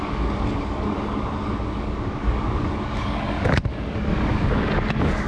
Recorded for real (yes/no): no